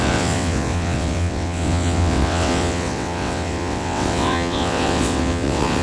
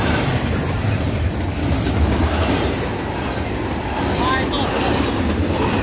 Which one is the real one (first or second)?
second